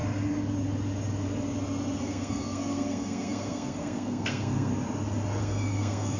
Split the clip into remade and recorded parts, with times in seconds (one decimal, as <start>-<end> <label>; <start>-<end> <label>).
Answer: 0.0-2.0 recorded; 2.0-4.7 remade; 4.7-5.4 recorded; 5.4-6.2 remade